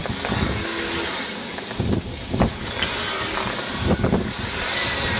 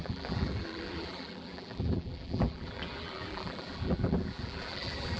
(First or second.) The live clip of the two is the first